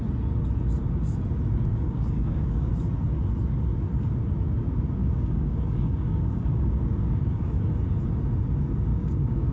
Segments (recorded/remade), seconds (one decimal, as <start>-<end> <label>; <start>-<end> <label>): 0.0-1.7 recorded; 1.7-2.7 remade; 2.7-5.0 recorded; 5.0-7.6 remade; 7.6-8.9 recorded; 8.9-9.5 remade